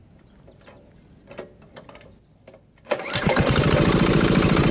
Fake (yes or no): no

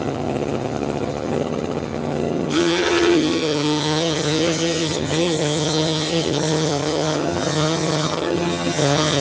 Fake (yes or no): yes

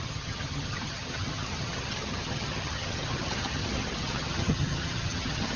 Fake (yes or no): yes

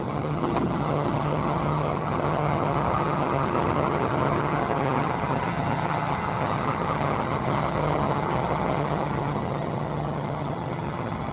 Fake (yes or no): yes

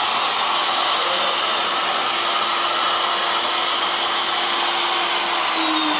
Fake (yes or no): no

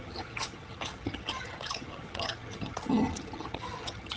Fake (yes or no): yes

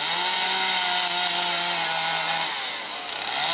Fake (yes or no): no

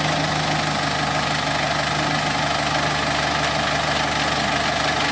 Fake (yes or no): no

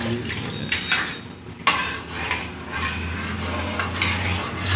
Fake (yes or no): no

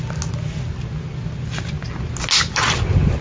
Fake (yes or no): no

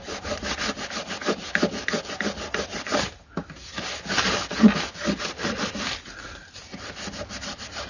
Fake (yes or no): no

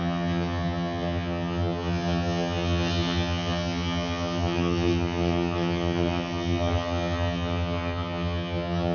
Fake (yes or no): yes